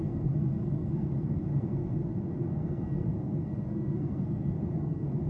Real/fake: fake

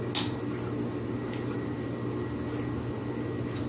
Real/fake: real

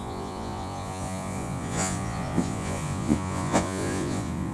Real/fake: fake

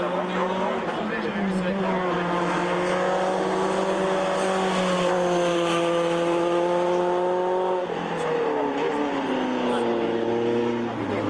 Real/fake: real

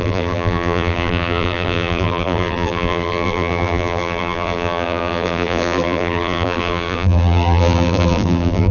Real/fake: fake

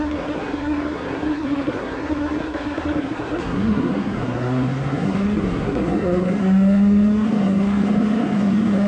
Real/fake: fake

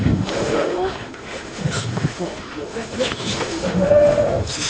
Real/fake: fake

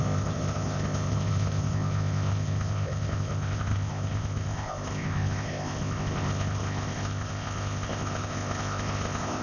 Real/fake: fake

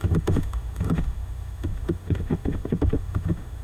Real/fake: fake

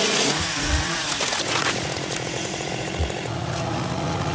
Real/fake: fake